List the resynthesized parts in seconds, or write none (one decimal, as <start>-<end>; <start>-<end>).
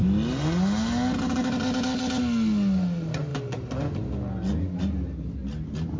none